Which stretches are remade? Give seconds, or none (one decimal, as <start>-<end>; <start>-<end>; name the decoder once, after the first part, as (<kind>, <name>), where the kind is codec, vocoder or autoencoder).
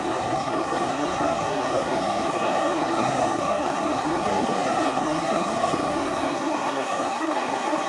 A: 0.0-7.9 (codec, SNAC)